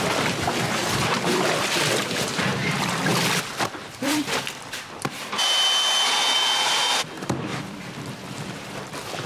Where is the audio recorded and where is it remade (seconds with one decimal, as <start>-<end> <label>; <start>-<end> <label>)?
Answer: 0.0-0.8 recorded; 0.8-1.8 remade; 1.8-3.1 recorded; 3.1-4.8 remade; 4.8-7.5 recorded; 7.5-9.3 remade